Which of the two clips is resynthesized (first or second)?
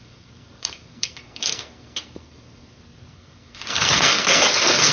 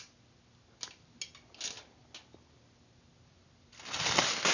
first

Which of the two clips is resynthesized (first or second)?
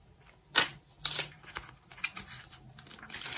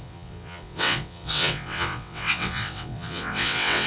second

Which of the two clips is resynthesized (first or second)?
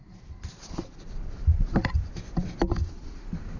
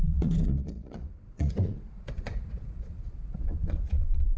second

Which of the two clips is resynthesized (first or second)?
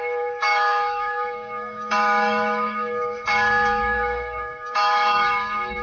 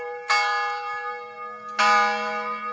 first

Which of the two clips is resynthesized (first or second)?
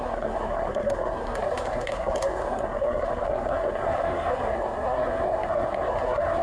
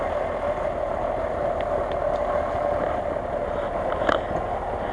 first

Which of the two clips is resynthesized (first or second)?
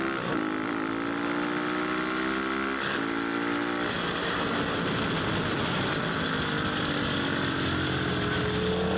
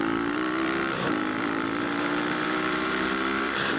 second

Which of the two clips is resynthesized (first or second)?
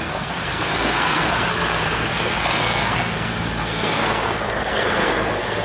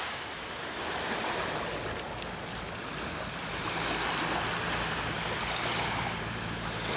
first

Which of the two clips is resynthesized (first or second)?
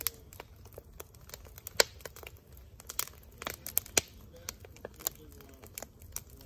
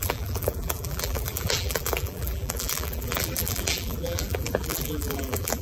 second